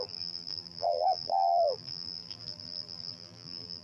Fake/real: fake